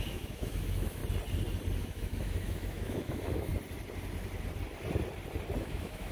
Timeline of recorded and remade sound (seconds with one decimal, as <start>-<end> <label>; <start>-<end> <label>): 0.0-1.0 remade; 1.0-1.8 recorded; 1.8-3.5 remade; 3.5-5.6 recorded; 5.6-6.1 remade